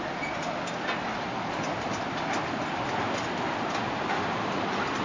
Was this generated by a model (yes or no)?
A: no